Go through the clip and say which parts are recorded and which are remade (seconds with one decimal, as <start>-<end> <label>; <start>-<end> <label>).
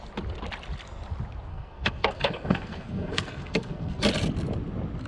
0.0-1.5 recorded; 1.5-4.0 remade; 4.0-5.1 recorded